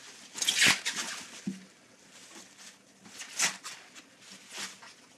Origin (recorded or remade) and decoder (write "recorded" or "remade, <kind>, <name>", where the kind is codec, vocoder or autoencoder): recorded